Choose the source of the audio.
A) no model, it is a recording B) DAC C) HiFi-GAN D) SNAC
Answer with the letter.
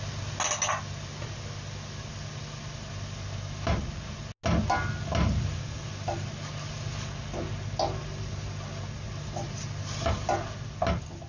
A